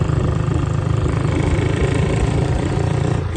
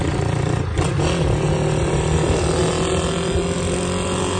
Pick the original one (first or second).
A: second